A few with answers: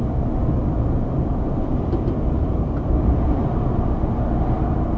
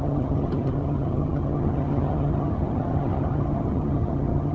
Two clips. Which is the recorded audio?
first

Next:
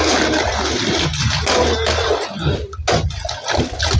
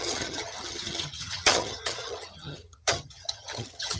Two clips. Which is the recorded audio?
first